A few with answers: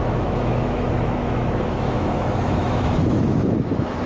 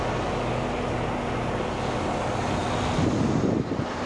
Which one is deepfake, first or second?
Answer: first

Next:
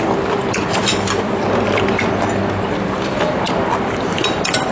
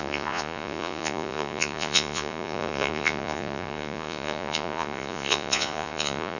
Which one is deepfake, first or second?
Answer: second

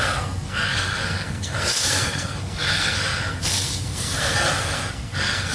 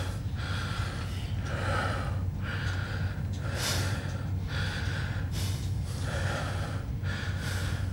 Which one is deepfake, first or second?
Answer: first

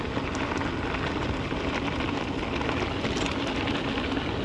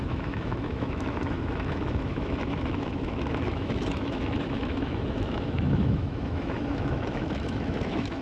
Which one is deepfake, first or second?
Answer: second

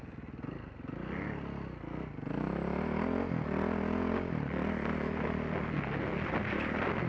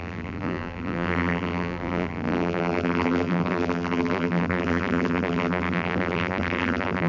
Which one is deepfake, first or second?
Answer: second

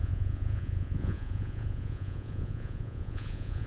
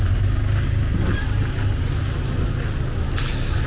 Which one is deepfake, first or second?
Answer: first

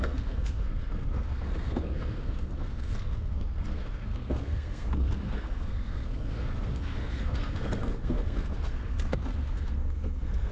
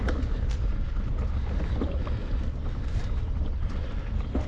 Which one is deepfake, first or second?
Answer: first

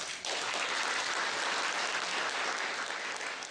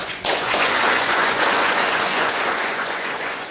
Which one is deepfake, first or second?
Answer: second